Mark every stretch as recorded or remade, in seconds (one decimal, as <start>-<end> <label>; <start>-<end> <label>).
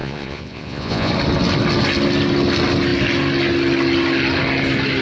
0.0-1.1 remade; 1.1-5.0 recorded